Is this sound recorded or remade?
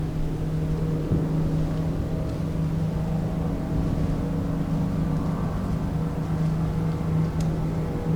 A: recorded